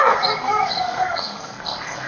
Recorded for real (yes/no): no